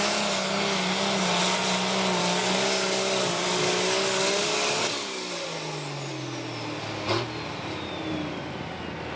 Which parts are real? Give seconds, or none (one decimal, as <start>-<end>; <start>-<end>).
0.0-2.2; 5.3-9.2